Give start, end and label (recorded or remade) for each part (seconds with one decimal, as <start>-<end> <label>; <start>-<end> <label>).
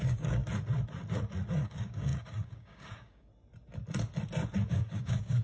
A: 0.0-0.4 remade; 0.4-1.5 recorded; 1.5-3.3 remade; 3.3-4.7 recorded; 4.7-5.4 remade